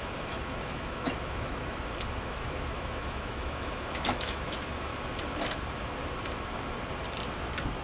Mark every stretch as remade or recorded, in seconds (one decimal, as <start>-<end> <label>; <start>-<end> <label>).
0.0-4.9 remade; 4.9-7.8 recorded